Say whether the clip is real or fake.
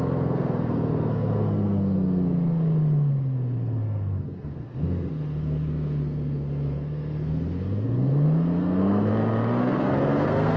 fake